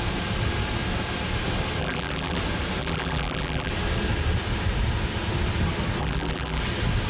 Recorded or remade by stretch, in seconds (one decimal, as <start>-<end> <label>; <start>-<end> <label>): 0.0-1.8 recorded; 1.8-2.4 remade; 2.4-2.8 recorded; 2.8-3.7 remade; 3.7-6.0 recorded; 6.0-6.6 remade; 6.6-7.1 recorded